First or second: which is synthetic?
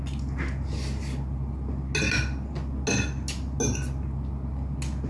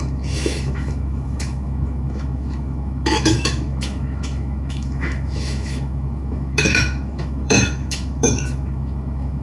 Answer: second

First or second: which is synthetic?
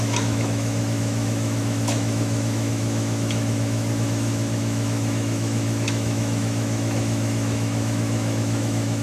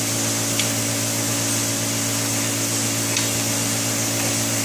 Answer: first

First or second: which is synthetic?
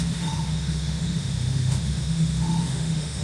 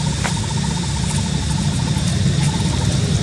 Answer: first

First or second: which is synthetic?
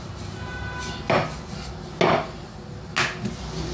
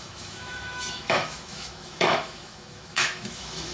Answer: second